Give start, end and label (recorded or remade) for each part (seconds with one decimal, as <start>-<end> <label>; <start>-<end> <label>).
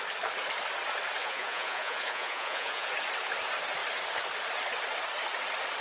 0.0-1.2 recorded; 1.2-2.9 remade; 2.9-5.8 recorded